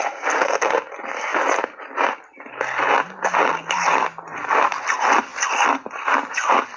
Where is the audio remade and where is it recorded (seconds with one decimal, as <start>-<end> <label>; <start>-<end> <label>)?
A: 0.0-1.3 recorded; 1.3-2.8 remade; 2.8-6.8 recorded